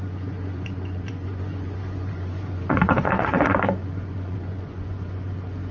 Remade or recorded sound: remade